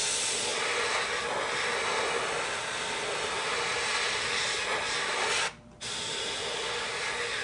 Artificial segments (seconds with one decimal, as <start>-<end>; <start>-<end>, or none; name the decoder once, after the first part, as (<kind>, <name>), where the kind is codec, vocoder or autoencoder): none